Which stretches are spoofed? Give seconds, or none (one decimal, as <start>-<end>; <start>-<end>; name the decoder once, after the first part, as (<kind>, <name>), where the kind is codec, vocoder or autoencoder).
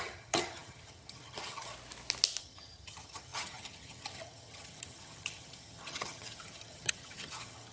0.0-1.7 (vocoder, HiFi-GAN); 2.4-7.7